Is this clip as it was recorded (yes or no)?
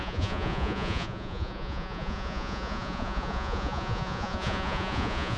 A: no